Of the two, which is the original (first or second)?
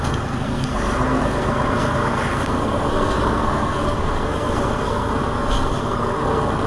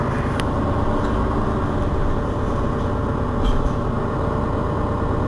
second